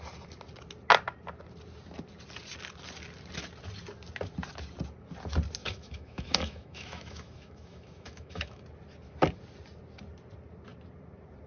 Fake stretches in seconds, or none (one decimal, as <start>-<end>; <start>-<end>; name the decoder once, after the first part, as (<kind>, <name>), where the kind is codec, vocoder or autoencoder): 5.6-8.6 (autoencoder, DAC-VAE)